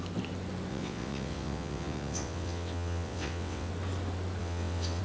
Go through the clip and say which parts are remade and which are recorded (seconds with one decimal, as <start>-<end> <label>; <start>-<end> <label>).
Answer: 0.0-0.7 recorded; 0.7-3.7 remade; 3.7-4.4 recorded; 4.4-5.0 remade